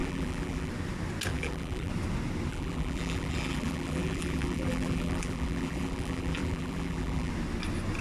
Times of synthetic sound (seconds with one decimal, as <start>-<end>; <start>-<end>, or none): 0.0-0.7; 1.3-1.9; 2.5-7.3